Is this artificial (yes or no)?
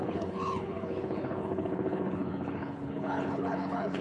yes